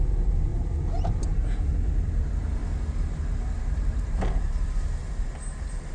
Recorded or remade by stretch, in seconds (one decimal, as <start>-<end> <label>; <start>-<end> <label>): 0.0-0.5 remade; 0.5-1.2 recorded; 1.2-2.6 remade; 2.6-3.6 recorded; 3.6-5.9 remade